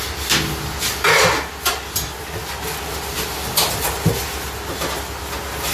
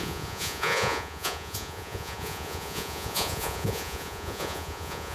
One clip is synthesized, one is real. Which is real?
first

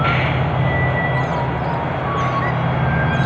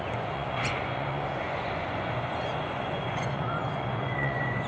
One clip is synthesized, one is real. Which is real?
first